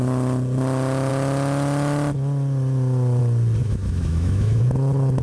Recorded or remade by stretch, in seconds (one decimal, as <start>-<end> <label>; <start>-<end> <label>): 0.0-3.6 recorded; 3.6-4.6 remade; 4.6-5.2 recorded